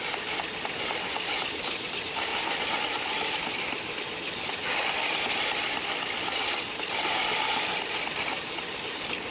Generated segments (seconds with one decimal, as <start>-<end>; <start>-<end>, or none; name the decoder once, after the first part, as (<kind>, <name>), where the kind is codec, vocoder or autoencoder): none